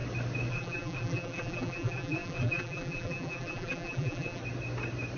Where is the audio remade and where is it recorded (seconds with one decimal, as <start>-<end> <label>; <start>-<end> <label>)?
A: 0.0-0.5 recorded; 0.5-4.4 remade; 4.4-5.2 recorded